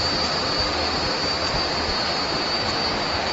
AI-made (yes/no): no